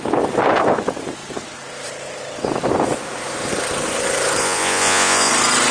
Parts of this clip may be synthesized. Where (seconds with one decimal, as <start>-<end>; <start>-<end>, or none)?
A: 4.4-5.3